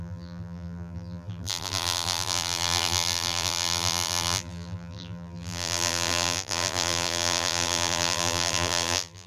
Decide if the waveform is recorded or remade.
remade